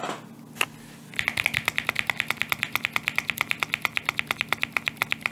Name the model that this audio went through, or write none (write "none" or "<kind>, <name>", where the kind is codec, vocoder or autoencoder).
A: none